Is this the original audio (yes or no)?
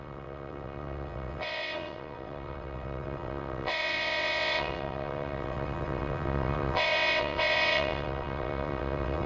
no